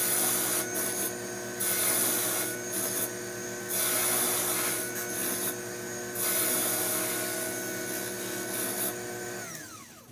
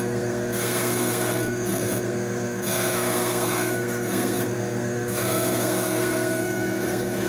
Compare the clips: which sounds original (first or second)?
first